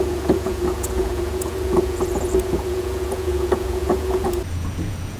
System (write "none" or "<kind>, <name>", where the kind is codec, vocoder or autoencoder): vocoder, Vocos